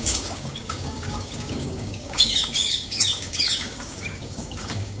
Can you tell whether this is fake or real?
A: fake